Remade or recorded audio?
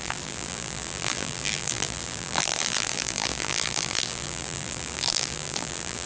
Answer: remade